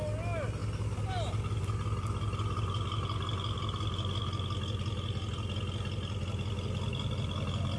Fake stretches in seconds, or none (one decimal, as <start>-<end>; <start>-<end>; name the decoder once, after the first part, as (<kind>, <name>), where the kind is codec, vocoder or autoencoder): none